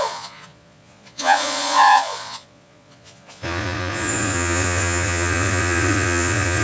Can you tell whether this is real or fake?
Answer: fake